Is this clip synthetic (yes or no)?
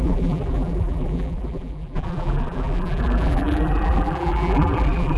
yes